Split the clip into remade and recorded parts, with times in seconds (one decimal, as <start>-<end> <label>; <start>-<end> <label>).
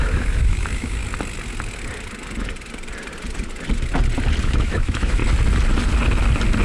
0.0-1.0 remade; 1.0-4.4 recorded; 4.4-5.2 remade; 5.2-6.6 recorded